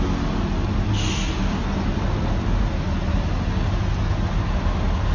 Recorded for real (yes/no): yes